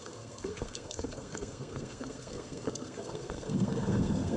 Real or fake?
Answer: fake